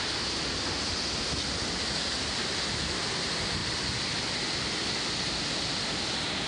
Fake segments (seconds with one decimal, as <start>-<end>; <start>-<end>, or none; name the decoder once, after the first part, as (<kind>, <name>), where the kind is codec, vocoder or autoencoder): none